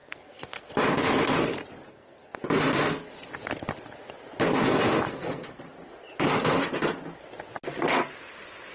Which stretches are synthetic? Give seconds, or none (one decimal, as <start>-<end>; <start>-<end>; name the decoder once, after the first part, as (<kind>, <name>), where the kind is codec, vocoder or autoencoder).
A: 0.0-0.7 (codec, SNAC); 1.9-2.4; 5.1-5.6